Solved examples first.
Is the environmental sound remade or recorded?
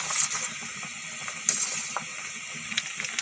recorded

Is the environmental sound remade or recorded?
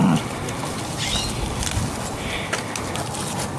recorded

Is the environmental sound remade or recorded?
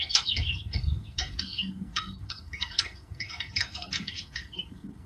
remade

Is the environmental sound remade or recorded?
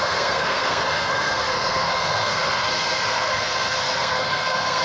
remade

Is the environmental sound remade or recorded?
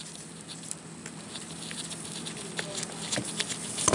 recorded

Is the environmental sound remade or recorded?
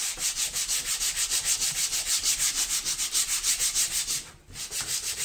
recorded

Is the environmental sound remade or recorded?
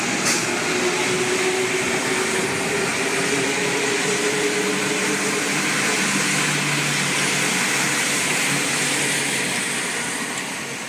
recorded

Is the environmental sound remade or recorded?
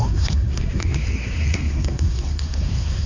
remade